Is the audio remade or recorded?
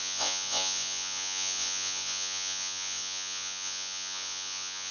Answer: remade